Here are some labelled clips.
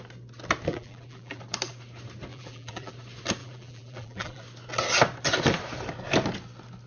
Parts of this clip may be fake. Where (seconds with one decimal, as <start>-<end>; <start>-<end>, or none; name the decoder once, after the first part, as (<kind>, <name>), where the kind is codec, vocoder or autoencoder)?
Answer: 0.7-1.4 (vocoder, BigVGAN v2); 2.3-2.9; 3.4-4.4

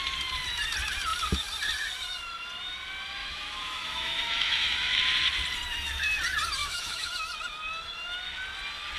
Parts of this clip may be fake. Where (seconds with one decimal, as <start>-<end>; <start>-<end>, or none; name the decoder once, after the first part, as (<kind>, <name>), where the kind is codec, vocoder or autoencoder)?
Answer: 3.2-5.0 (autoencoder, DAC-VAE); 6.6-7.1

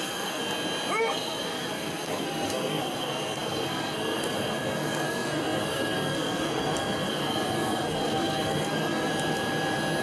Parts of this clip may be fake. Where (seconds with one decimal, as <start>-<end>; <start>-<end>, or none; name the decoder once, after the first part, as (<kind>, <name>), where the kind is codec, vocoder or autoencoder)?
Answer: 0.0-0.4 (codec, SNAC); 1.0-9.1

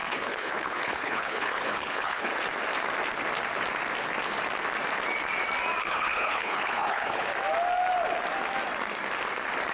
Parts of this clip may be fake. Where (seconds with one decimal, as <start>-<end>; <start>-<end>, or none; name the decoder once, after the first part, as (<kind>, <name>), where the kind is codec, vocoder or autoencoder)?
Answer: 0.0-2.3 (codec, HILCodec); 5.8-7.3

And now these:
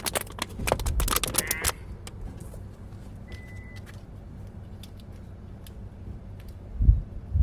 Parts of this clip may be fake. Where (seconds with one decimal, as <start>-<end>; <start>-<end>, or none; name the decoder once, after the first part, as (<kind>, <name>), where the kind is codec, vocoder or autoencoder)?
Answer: none

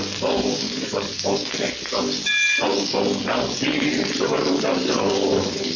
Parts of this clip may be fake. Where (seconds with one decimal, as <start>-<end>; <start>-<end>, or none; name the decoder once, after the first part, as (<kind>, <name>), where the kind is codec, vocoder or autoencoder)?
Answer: 0.0-1.3 (codec, DAC); 4.8-5.8